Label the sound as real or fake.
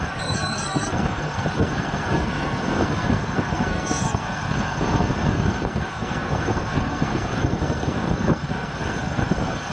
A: fake